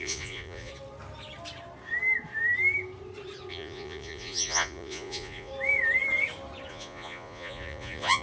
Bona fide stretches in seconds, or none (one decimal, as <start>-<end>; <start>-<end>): 0.7-3.5; 5.5-6.7